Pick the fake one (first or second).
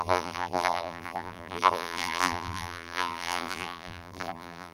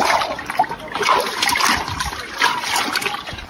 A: first